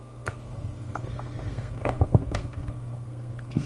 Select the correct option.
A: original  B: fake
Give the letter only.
B